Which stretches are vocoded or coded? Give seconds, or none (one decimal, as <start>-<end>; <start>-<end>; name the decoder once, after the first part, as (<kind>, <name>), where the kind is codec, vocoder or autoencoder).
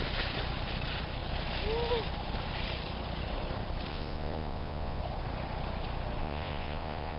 3.9-5.0 (vocoder, Vocos); 6.2-7.2